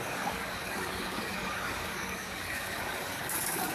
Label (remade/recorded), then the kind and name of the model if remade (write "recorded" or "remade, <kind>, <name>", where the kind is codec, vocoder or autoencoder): remade, codec, DAC